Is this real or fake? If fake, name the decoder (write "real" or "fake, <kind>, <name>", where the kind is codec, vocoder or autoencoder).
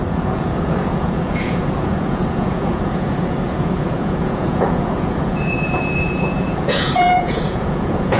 fake, vocoder, Vocos